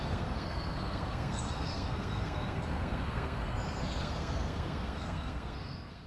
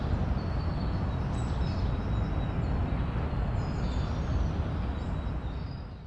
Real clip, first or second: second